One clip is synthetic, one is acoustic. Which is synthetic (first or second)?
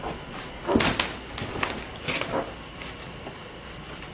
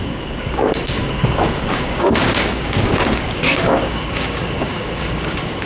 second